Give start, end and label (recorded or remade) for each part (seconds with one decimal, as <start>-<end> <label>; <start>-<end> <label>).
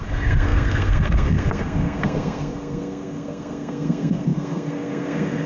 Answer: 0.0-5.5 remade